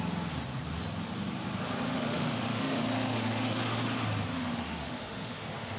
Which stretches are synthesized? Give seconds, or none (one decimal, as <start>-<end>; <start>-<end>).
1.9-3.8; 4.3-5.8